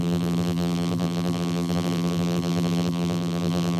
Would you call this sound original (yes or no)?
no